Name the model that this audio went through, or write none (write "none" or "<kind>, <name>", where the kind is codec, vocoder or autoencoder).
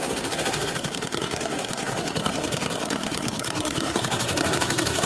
codec, SNAC